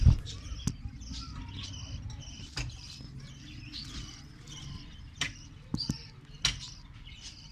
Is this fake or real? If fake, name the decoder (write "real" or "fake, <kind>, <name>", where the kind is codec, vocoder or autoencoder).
real